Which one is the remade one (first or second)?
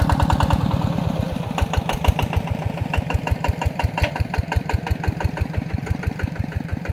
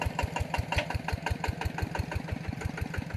first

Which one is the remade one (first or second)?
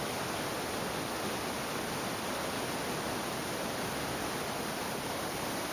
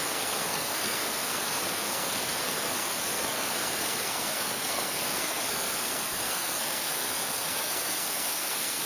second